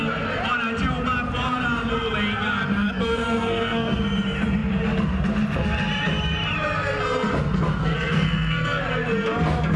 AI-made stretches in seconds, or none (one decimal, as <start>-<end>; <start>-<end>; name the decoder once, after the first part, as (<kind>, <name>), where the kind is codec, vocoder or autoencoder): 2.8-4.0 (codec, SNAC); 7.8-8.8